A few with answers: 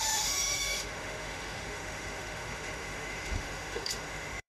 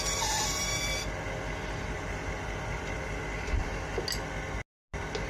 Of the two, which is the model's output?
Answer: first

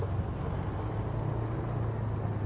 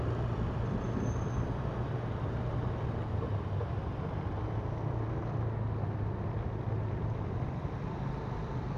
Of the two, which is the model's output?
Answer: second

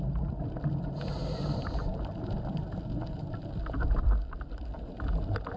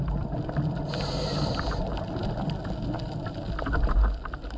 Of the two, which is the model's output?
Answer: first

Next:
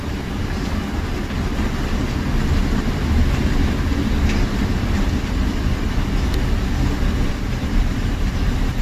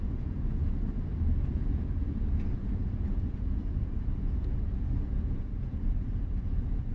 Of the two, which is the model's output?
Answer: second